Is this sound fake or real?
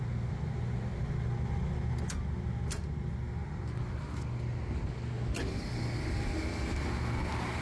real